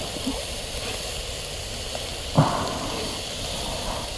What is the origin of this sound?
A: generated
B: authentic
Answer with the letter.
A